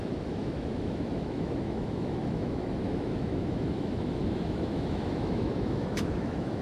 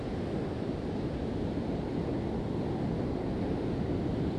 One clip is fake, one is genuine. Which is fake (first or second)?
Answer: first